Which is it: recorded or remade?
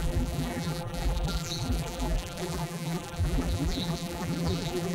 remade